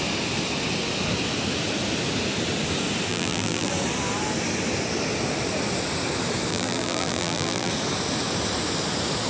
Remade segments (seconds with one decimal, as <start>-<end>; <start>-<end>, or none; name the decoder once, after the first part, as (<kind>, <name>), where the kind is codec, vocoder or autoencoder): 3.1-3.7 (vocoder, BigVGAN v2); 6.5-7.7